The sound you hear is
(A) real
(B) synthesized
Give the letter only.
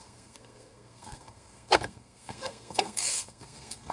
B